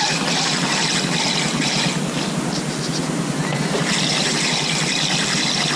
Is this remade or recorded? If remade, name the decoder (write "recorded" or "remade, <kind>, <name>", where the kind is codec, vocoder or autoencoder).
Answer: recorded